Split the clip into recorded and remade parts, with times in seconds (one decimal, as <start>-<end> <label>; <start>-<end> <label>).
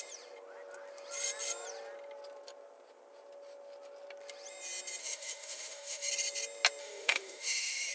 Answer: 0.0-5.0 recorded; 5.0-6.1 remade; 6.1-6.8 recorded; 6.8-7.9 remade